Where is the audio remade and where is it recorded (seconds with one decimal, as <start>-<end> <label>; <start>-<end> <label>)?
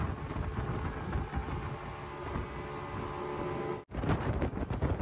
0.0-5.0 recorded